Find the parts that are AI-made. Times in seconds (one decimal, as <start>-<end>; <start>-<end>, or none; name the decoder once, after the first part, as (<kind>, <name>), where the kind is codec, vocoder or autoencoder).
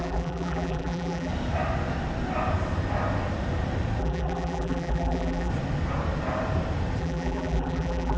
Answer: 0.0-1.3 (vocoder, BigVGAN v2); 4.0-5.5; 7.0-8.2